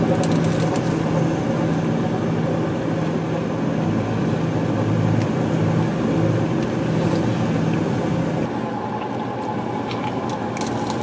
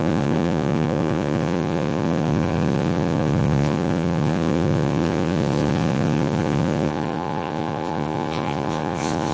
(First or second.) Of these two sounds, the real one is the first